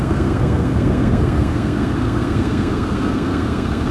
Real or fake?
fake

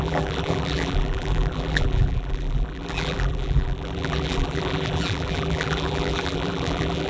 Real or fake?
fake